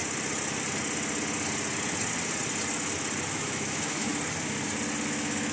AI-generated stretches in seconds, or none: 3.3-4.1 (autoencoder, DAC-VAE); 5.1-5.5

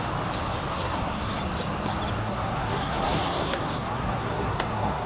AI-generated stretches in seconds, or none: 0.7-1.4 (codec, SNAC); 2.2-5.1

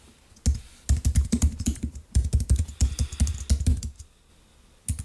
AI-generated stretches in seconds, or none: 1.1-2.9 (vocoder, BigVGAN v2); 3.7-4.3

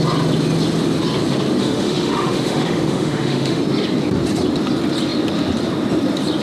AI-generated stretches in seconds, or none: 1.6-3.6 (autoencoder, DAC-VAE)